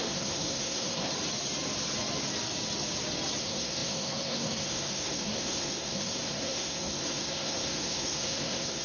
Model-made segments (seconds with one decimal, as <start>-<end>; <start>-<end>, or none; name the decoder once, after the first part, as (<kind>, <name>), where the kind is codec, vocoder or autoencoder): 0.0-1.1 (codec, SNAC); 3.4-8.8